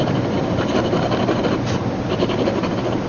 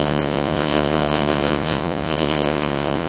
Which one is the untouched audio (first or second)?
first